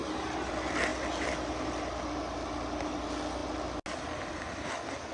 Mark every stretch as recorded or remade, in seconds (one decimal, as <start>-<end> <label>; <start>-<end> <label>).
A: 0.0-5.1 recorded

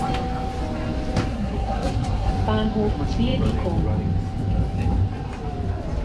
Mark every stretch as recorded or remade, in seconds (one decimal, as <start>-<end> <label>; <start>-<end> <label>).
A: 0.0-1.3 recorded; 1.3-2.3 remade; 2.3-6.0 recorded

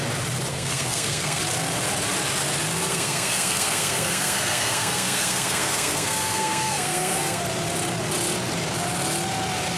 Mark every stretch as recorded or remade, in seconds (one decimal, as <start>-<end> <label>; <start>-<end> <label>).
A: 0.0-0.5 recorded; 0.5-1.4 remade; 1.4-2.9 recorded; 2.9-7.4 remade; 7.4-9.8 recorded

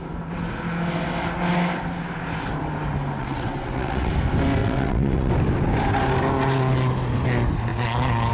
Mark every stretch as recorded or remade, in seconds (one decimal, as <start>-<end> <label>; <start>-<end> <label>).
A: 0.0-3.2 recorded; 3.2-4.1 remade; 4.1-4.6 recorded; 4.6-5.3 remade; 5.3-8.3 recorded

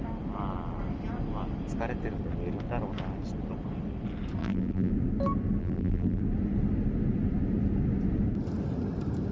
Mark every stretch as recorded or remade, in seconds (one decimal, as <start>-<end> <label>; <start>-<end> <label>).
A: 0.0-4.4 recorded; 4.4-4.9 remade; 4.9-5.6 recorded; 5.6-6.2 remade; 6.2-9.3 recorded

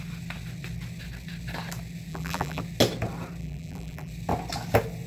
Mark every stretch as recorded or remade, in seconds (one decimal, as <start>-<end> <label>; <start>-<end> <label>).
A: 0.0-2.1 recorded; 2.1-2.6 remade; 2.6-3.4 recorded; 3.4-4.1 remade; 4.1-5.1 recorded

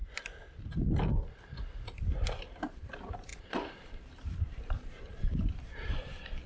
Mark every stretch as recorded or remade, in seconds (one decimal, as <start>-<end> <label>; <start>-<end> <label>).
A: 0.0-2.3 recorded; 2.3-6.5 remade